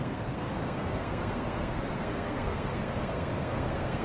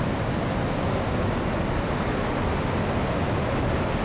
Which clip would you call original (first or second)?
second